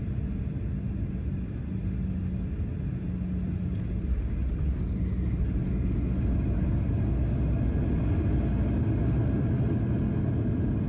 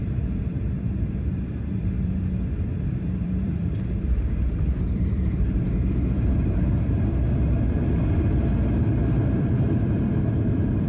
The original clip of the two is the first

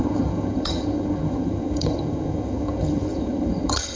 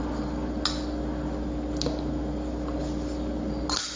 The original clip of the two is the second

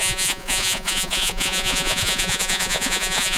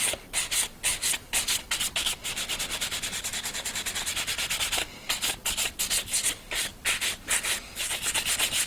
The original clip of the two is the second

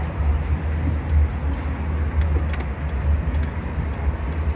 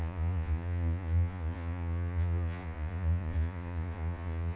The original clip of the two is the first